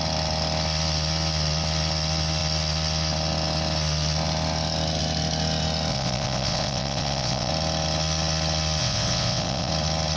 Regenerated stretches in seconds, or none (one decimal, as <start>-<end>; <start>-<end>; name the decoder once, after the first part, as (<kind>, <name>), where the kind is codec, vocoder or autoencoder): 5.9-7.5 (vocoder, WaveNeXt); 8.8-9.7